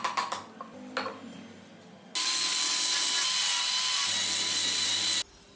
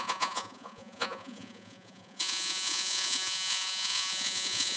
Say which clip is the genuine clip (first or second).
first